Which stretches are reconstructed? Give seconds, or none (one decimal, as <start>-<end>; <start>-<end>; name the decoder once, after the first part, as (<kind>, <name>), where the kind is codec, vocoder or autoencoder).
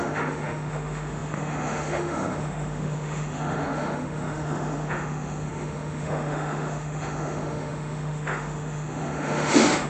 0.0-9.9 (autoencoder, DAC-VAE)